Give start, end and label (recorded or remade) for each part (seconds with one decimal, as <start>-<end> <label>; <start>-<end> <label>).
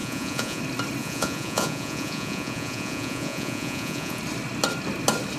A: 0.0-0.6 remade; 0.6-1.0 recorded; 1.0-4.2 remade; 4.2-5.4 recorded